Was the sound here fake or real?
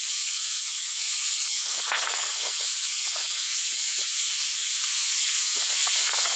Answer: fake